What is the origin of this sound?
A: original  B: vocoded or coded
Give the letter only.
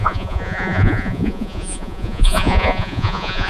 B